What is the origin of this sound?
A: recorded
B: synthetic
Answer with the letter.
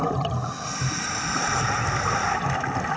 A